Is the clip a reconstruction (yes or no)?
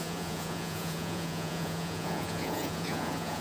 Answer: yes